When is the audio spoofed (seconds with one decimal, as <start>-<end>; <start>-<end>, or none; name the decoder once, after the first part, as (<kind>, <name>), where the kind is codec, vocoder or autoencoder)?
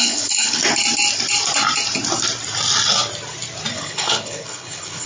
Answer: 0.0-0.6 (codec, HILCodec); 3.7-5.1